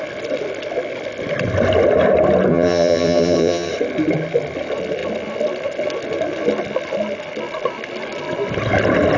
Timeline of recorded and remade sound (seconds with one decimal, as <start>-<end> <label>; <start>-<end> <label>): 0.0-2.5 recorded; 2.5-3.7 remade; 3.7-9.2 recorded

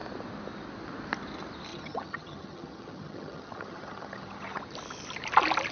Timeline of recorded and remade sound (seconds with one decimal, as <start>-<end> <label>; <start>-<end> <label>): 0.0-1.7 recorded; 1.7-4.6 remade; 4.6-5.7 recorded

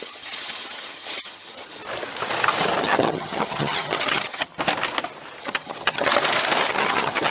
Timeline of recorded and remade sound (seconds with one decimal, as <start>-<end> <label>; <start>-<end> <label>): 0.0-1.8 remade; 1.8-2.8 recorded; 2.8-4.5 remade; 4.5-5.4 recorded; 5.4-6.1 remade; 6.1-6.7 recorded; 6.7-7.3 remade